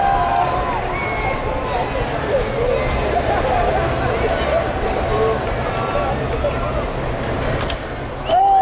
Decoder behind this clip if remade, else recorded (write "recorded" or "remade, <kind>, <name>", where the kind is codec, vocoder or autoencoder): recorded